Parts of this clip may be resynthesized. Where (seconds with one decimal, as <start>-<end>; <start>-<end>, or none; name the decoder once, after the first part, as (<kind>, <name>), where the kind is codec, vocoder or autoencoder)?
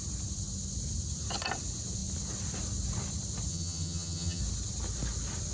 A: 3.5-4.4 (vocoder, HiFi-GAN)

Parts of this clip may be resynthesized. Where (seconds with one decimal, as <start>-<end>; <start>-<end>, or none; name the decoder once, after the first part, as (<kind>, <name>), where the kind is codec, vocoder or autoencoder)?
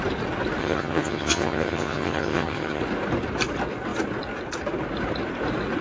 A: 0.6-2.8 (vocoder, HiFi-GAN)